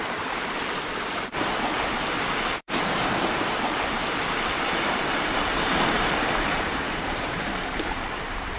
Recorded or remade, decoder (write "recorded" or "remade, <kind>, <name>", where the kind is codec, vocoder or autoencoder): remade, vocoder, BigVGAN v2